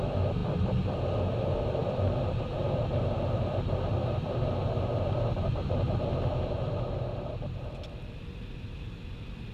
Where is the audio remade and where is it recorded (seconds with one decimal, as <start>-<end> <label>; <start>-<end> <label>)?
0.0-0.4 recorded; 0.4-1.2 remade; 1.2-9.5 recorded

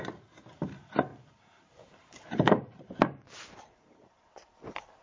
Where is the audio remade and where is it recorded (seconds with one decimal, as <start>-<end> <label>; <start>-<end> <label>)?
0.0-1.1 recorded; 1.1-4.1 remade; 4.1-5.0 recorded

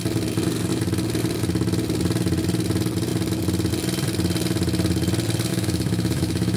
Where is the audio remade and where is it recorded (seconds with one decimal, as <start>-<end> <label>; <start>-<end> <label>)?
0.0-5.5 recorded; 5.5-6.6 remade

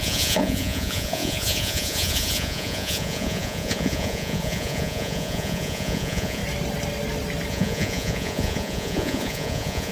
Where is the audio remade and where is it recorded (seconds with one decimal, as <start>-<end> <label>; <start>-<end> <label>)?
0.0-6.4 remade; 6.4-7.5 recorded; 7.5-9.9 remade

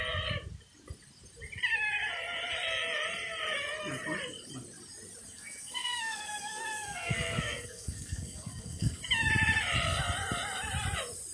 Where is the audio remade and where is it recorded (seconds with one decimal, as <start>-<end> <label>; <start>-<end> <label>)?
0.0-5.3 recorded; 5.3-9.0 remade; 9.0-11.3 recorded

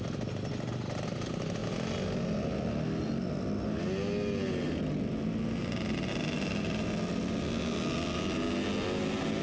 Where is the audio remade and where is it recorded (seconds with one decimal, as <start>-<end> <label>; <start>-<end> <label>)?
0.0-9.4 recorded

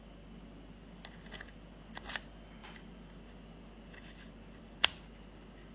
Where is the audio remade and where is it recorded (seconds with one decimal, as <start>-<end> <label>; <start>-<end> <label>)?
0.0-5.7 recorded